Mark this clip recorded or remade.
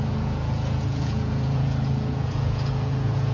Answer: remade